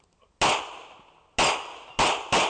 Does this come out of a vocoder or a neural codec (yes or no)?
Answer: no